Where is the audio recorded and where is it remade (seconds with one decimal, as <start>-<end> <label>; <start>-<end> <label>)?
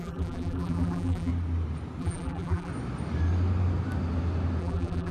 0.0-1.3 remade; 1.3-2.0 recorded; 2.0-2.7 remade; 2.7-4.6 recorded; 4.6-5.1 remade